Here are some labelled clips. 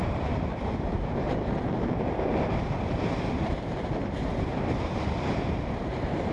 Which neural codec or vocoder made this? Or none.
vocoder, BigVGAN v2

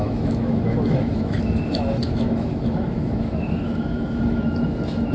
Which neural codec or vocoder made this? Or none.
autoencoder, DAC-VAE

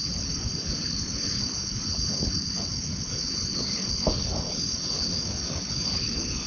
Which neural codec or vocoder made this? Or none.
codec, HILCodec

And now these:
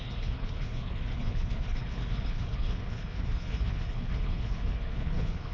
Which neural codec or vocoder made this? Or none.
codec, HILCodec